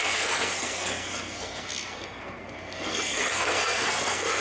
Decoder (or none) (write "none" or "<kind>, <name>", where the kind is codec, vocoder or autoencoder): codec, SNAC